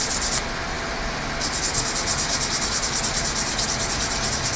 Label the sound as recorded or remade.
recorded